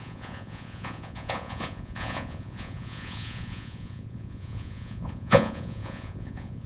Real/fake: fake